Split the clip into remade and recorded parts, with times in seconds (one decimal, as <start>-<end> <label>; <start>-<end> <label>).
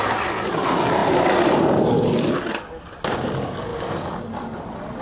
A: 0.0-5.0 recorded